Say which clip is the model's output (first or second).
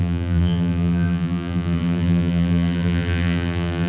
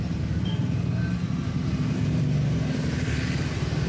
first